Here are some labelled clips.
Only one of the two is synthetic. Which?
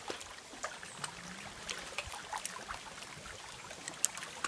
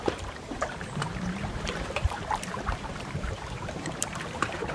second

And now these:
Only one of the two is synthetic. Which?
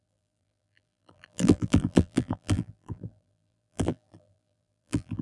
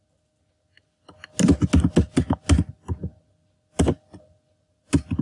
first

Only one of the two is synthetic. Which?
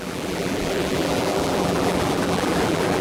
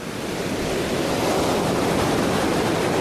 first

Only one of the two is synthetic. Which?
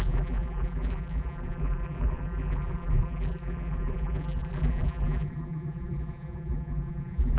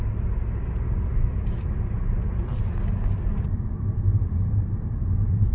first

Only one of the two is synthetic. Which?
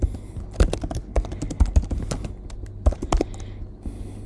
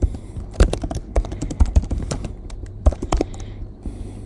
second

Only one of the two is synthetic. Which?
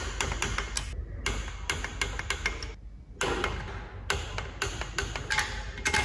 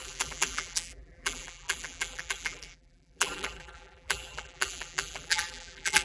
second